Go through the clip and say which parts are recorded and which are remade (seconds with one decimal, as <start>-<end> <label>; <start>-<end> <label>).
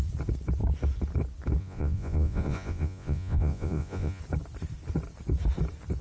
0.0-1.6 recorded; 1.6-4.2 remade; 4.2-6.0 recorded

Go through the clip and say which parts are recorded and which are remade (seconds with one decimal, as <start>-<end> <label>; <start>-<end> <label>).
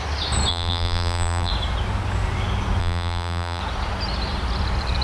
0.0-0.5 recorded; 0.5-1.5 remade; 1.5-2.8 recorded; 2.8-3.6 remade; 3.6-5.0 recorded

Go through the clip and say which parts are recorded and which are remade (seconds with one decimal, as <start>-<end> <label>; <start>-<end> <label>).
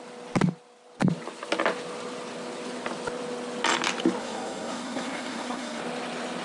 0.0-4.2 recorded; 4.2-5.8 remade; 5.8-6.4 recorded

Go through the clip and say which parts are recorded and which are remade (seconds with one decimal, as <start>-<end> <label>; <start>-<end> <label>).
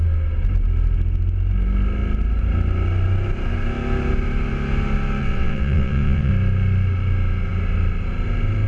0.0-5.2 recorded; 5.2-6.3 remade; 6.3-8.7 recorded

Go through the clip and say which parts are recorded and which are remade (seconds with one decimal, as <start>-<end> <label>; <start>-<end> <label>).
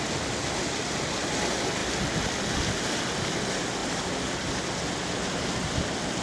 0.0-6.2 recorded